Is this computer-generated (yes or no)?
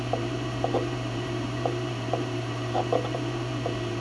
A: yes